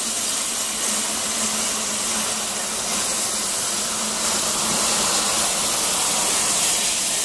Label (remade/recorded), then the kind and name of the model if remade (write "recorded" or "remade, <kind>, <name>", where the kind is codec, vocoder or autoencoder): recorded